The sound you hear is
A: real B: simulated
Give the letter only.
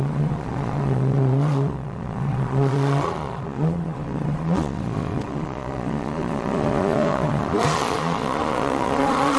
B